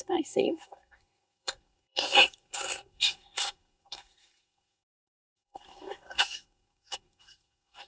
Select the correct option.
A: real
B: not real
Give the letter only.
B